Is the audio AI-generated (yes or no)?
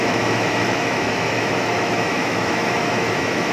yes